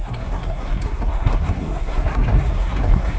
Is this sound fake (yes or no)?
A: yes